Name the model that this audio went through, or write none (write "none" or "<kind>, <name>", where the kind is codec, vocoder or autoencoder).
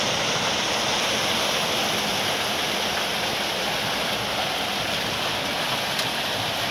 none